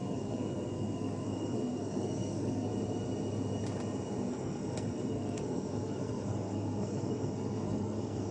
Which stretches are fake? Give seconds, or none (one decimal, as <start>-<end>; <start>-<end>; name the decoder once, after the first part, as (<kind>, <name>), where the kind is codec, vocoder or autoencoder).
0.0-2.7 (codec, SNAC); 4.2-8.3